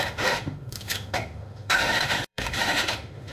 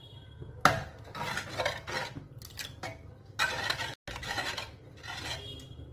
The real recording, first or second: second